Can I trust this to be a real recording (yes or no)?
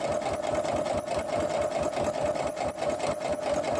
yes